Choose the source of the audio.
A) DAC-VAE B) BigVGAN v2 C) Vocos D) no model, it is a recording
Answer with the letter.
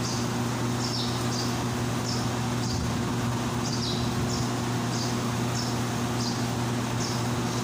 D